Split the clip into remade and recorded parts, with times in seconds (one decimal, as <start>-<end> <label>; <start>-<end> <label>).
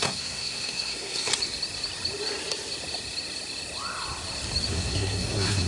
0.0-1.3 remade; 1.3-4.7 recorded; 4.7-5.7 remade